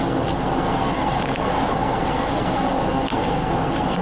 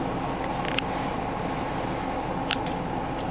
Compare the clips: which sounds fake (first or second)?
first